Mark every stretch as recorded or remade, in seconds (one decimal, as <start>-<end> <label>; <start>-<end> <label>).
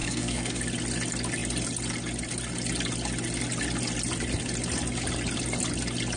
0.0-0.6 remade; 0.6-6.2 recorded